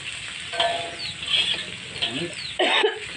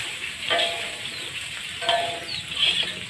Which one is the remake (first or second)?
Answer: second